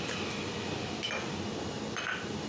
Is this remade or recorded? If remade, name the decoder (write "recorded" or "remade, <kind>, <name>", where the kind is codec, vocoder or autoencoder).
recorded